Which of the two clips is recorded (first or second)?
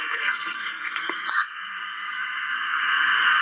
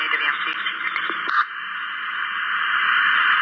second